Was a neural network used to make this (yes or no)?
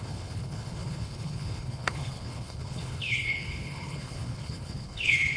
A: yes